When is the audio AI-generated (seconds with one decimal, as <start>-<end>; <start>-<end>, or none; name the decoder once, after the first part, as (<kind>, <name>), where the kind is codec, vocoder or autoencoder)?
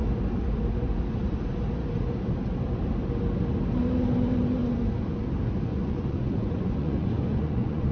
5.7-7.9 (vocoder, Vocos)